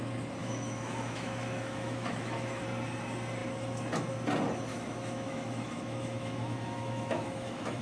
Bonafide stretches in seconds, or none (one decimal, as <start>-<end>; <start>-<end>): 0.0-0.4; 2.6-4.7